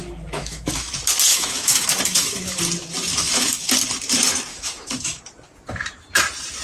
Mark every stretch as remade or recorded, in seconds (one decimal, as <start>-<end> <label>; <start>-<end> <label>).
0.0-0.9 remade; 0.9-1.3 recorded; 1.3-2.6 remade; 2.6-3.1 recorded; 3.1-3.7 remade; 3.7-4.5 recorded; 4.5-5.2 remade; 5.2-6.6 recorded